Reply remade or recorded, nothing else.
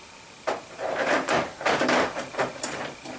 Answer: remade